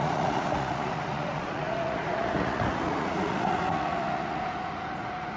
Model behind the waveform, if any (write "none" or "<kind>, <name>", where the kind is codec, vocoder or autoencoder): vocoder, Vocos